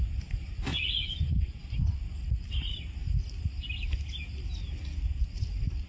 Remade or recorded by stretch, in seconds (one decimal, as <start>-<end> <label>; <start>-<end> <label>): 0.0-0.7 recorded; 0.7-2.0 remade; 2.0-5.9 recorded